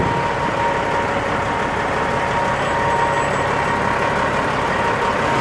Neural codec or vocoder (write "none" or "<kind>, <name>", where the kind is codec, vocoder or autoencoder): none